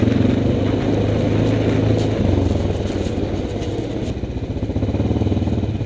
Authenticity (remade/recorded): recorded